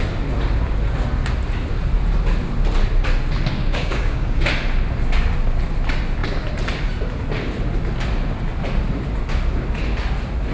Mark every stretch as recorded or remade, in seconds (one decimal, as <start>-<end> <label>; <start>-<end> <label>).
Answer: 0.0-3.6 recorded; 3.6-4.5 remade; 4.5-10.5 recorded